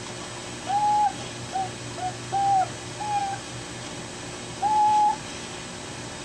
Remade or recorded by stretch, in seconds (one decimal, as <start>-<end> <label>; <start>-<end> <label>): 0.0-6.2 recorded